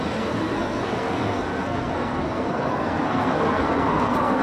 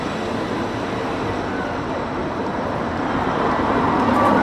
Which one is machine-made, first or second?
first